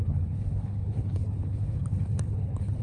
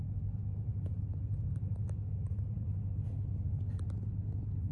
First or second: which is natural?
second